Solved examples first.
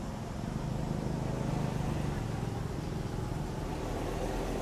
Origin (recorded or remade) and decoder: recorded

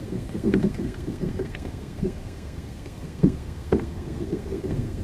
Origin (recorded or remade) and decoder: remade, codec, SNAC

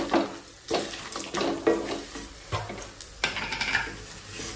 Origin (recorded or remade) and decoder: recorded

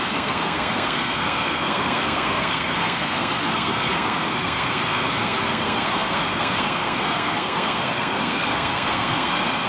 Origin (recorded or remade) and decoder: remade, codec, SNAC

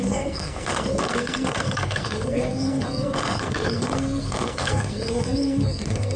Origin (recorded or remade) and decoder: remade, codec, SNAC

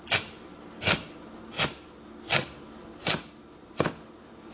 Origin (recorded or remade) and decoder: recorded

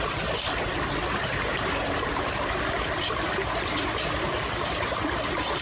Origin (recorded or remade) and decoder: recorded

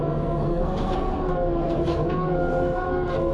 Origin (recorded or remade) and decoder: remade, codec, SNAC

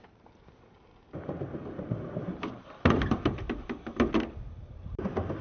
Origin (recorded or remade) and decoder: recorded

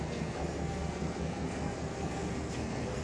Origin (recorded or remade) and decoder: remade, codec, SNAC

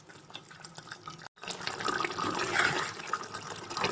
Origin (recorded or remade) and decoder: recorded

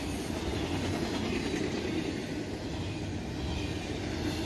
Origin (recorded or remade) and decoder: recorded